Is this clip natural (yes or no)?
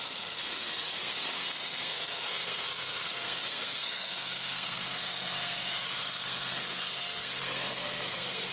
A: no